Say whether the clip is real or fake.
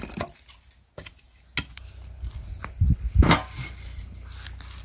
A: real